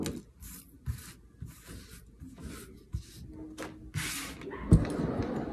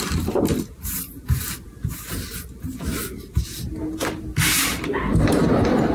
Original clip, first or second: first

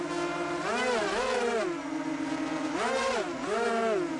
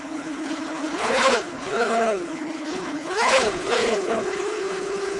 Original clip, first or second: first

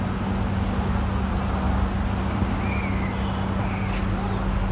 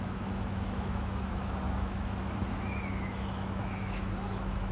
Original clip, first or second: first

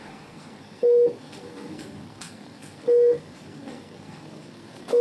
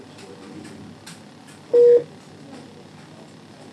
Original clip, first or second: second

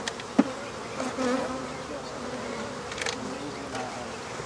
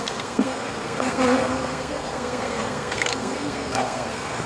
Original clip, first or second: first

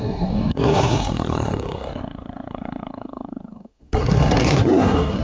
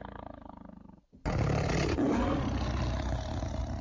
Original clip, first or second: second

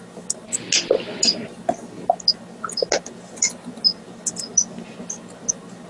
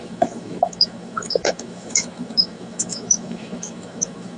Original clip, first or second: first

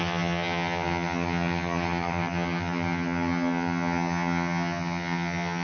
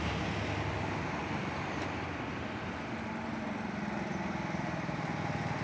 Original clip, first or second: second